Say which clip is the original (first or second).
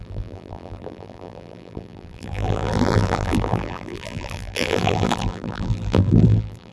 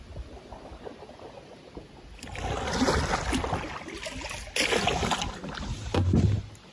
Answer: second